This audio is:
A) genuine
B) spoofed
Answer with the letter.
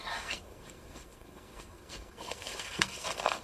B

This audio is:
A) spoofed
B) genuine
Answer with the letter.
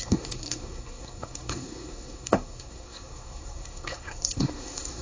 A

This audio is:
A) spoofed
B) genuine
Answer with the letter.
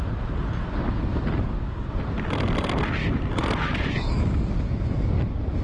B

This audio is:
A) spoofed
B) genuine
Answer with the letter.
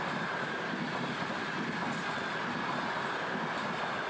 B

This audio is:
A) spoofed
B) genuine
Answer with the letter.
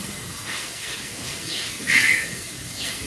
A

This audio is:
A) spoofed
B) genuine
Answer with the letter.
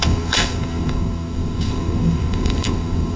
A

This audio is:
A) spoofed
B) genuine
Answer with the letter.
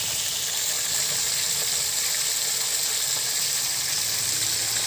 B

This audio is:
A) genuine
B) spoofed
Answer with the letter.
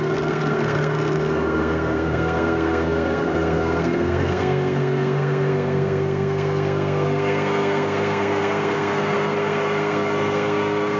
B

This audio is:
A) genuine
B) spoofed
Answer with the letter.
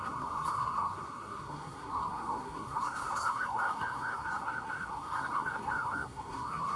B